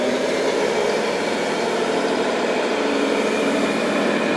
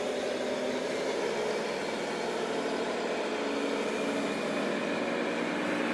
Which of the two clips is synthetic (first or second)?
first